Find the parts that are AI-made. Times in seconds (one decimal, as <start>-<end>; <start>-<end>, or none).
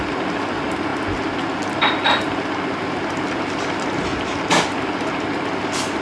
none